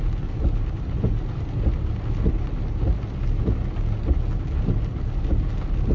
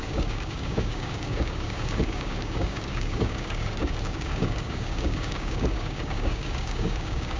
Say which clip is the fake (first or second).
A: second